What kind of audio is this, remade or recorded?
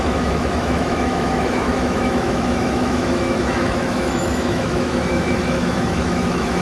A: remade